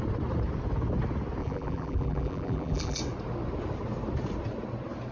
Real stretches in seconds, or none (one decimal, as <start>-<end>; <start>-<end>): 0.0-1.4; 3.0-5.1